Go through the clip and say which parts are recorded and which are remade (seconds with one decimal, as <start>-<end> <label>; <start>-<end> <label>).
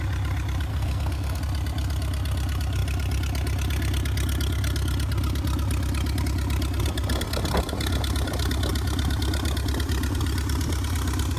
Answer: 0.0-0.7 recorded; 0.7-1.4 remade; 1.4-11.4 recorded